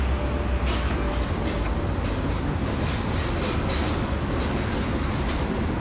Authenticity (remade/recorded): recorded